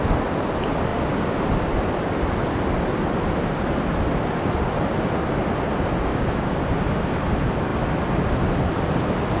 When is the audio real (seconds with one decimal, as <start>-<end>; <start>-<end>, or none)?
0.0-6.1; 6.6-9.4